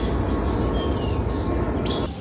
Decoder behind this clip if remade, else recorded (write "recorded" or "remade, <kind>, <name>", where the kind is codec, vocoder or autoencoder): recorded